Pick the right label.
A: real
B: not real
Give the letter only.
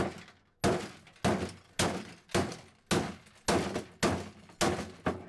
A